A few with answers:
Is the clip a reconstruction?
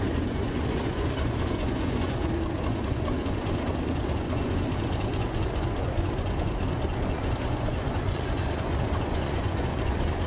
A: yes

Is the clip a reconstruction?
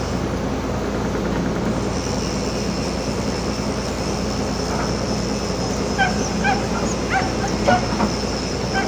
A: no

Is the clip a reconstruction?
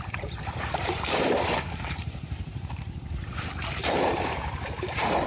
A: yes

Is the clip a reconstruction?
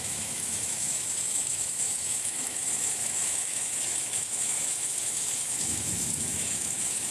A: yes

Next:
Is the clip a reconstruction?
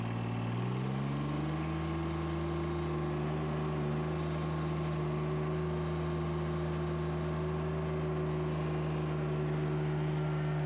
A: no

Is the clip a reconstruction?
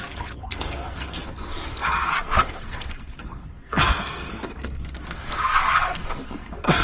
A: yes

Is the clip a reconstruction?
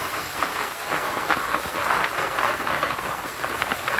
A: yes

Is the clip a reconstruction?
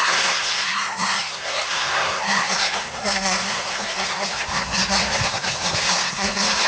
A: yes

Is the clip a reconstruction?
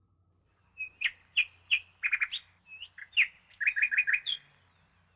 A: no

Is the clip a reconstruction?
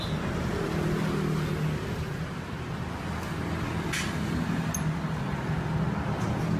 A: no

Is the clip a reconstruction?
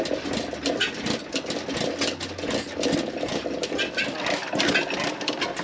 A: no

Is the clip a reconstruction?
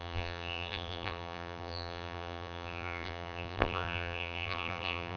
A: yes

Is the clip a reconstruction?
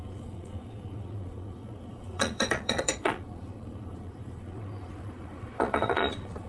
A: yes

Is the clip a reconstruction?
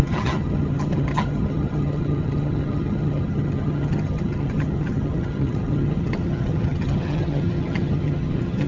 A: yes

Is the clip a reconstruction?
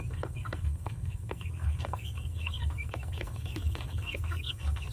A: yes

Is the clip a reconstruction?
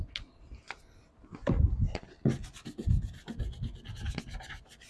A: no